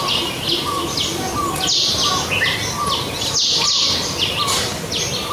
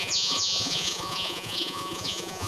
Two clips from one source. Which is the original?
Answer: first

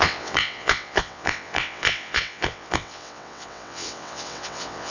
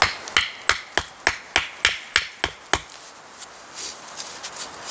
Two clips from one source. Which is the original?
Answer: second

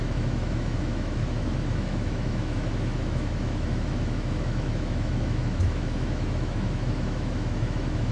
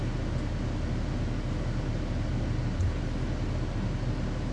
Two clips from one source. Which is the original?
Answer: second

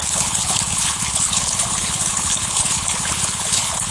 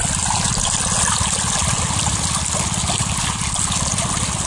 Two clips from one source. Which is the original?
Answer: second